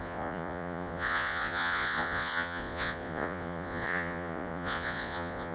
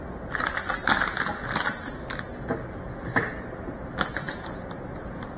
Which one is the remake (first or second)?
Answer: first